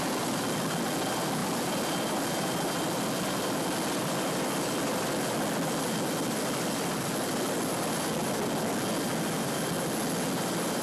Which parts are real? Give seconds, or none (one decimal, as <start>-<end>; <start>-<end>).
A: 0.0-10.8